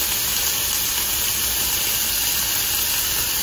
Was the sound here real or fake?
real